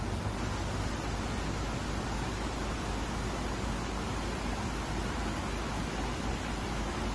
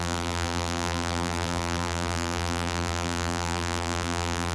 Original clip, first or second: first